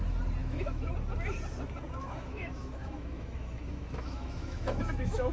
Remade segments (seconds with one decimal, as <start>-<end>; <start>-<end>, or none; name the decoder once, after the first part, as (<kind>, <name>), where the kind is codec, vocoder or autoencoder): 0.4-0.9 (autoencoder, DAC-VAE); 2.0-5.3